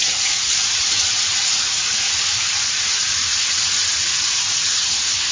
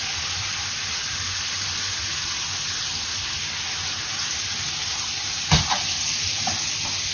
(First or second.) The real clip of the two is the second